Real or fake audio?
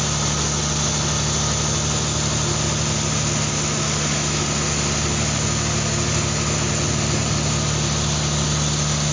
real